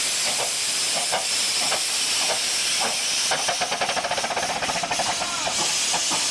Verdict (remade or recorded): recorded